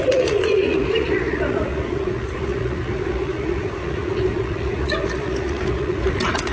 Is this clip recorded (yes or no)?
no